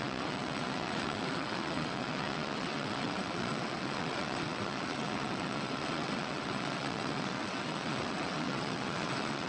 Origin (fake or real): fake